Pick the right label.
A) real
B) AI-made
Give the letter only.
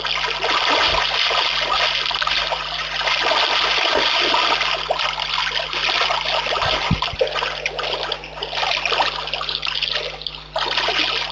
A